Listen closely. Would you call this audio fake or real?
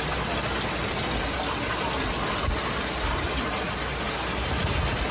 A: real